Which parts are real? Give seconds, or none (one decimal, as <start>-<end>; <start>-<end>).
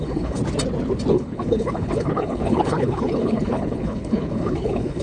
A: 0.4-1.1